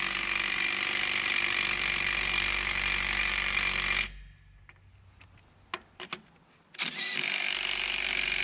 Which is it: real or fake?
real